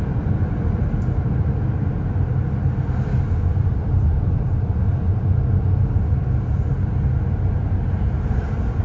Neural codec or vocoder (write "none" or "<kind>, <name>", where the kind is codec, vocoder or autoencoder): none